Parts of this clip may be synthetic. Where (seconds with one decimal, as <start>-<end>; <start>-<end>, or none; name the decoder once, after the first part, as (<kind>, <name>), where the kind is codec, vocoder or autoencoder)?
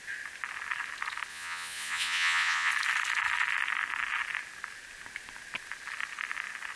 1.3-2.7 (vocoder, Vocos)